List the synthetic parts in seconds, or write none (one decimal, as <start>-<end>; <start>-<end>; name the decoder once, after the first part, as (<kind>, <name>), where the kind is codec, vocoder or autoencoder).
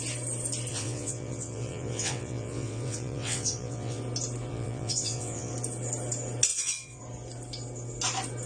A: 0.7-4.0 (vocoder, WaveNeXt); 4.5-5.5; 6.5-7.0